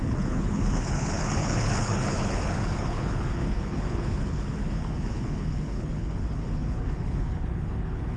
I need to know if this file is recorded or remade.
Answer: remade